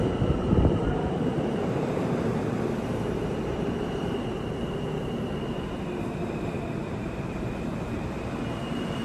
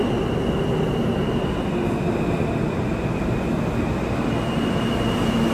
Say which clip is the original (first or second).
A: second